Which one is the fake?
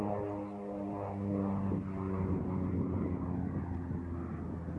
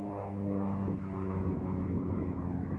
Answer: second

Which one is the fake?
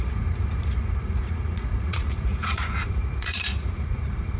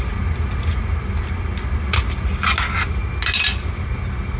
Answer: first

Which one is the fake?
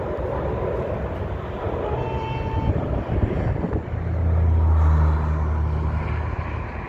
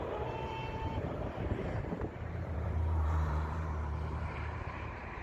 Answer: second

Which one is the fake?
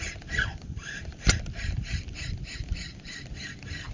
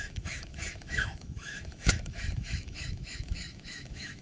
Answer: second